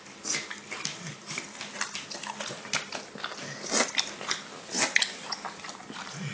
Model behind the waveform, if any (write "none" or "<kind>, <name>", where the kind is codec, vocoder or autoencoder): none